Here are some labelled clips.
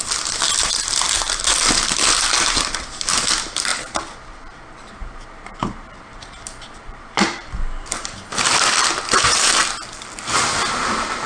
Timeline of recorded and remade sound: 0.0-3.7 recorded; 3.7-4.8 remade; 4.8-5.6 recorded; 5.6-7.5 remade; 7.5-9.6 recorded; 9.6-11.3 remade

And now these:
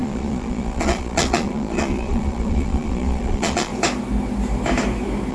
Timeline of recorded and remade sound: 0.0-3.7 remade; 3.7-5.3 recorded

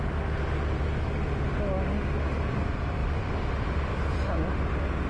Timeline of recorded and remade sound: 0.0-3.0 recorded; 3.0-4.3 remade; 4.3-5.1 recorded

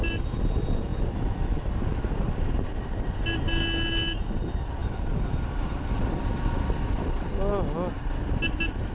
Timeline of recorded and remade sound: 0.0-8.9 recorded